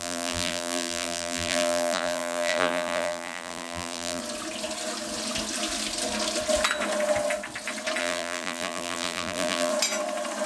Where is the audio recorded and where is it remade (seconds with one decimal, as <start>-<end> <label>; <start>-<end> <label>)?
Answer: 0.0-4.2 remade; 4.2-8.0 recorded; 8.0-9.7 remade; 9.7-10.5 recorded